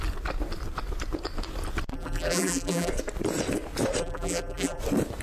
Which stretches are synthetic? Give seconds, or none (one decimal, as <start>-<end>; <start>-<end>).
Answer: 1.9-2.9; 4.0-4.8

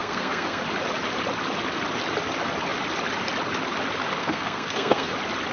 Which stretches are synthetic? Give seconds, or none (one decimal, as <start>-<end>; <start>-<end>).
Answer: 0.0-0.6; 4.2-5.1

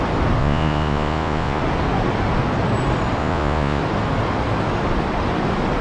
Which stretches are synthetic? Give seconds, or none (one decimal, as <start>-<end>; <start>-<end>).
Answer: 0.4-1.6; 3.2-3.8

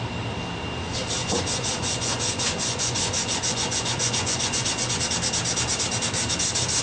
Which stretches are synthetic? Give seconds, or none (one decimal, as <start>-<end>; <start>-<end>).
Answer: 1.2-5.0

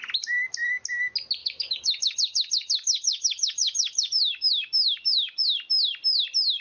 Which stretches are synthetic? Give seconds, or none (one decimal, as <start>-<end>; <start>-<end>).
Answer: 1.4-5.4

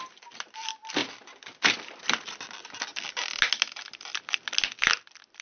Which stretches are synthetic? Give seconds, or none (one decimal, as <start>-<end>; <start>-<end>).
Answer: none

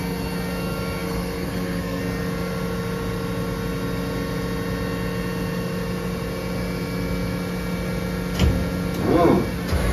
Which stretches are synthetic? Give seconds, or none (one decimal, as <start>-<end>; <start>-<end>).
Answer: 1.0-2.0